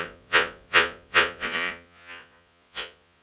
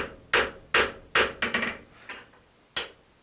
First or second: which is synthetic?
first